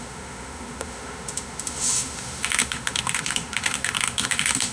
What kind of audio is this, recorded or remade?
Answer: remade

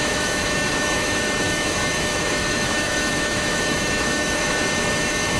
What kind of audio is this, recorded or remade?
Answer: remade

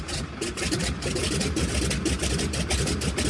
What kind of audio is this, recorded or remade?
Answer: recorded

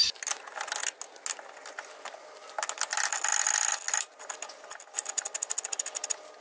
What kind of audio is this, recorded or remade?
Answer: recorded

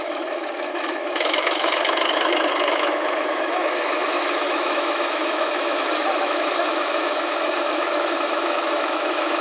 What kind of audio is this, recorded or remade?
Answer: remade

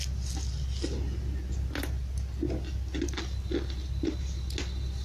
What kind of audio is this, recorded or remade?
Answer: recorded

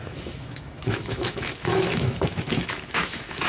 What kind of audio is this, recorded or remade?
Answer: remade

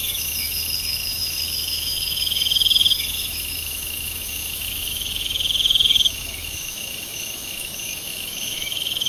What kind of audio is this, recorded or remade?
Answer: remade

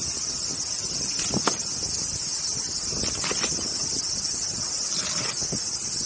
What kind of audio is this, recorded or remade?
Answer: recorded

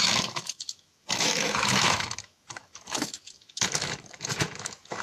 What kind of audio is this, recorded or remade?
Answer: remade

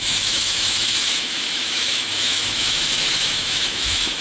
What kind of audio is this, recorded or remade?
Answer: remade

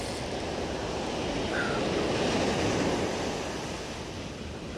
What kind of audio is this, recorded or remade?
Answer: recorded